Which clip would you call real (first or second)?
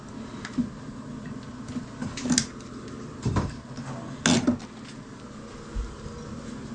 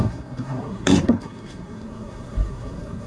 first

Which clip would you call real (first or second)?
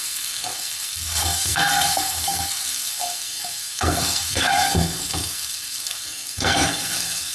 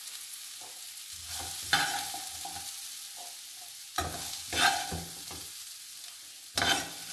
second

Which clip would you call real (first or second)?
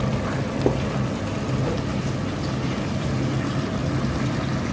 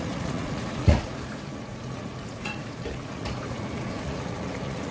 first